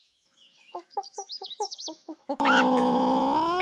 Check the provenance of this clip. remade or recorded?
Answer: remade